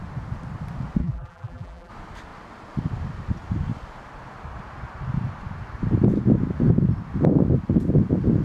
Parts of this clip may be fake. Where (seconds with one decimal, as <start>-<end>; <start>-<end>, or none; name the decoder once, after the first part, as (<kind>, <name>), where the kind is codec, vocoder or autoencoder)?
1.0-1.9 (vocoder, BigVGAN v2)